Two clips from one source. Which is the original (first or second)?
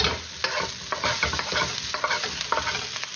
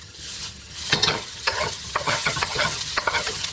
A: first